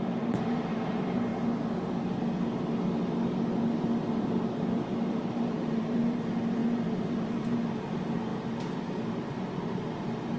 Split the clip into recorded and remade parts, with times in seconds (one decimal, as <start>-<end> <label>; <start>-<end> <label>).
0.0-1.3 remade; 1.3-5.3 recorded; 5.3-10.4 remade